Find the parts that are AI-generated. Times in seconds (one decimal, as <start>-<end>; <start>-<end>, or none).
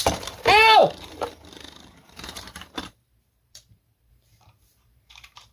0.0-5.5